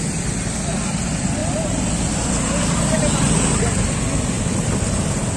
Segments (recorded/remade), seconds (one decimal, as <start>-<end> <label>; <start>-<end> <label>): 0.0-5.4 recorded